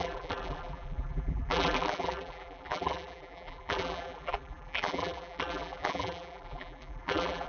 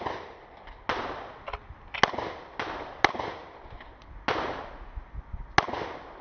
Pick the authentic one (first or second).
second